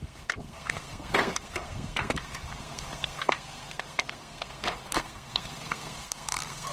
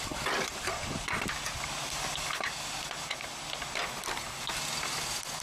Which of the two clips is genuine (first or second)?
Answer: second